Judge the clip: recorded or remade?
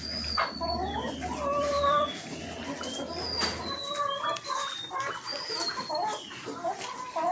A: recorded